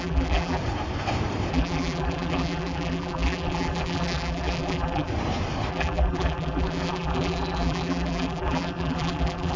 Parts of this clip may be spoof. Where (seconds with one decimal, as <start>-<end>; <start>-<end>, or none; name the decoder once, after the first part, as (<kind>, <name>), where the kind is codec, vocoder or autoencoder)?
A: 0.0-0.6 (vocoder, BigVGAN v2); 1.5-5.1; 5.7-9.6